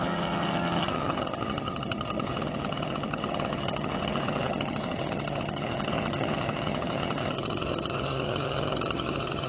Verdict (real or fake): fake